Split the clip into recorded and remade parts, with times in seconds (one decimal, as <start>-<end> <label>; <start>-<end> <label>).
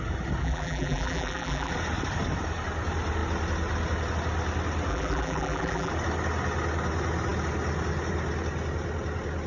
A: 0.0-0.4 recorded; 0.4-1.7 remade; 1.7-4.9 recorded; 4.9-5.9 remade; 5.9-9.5 recorded